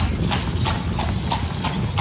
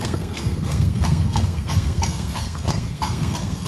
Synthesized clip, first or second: second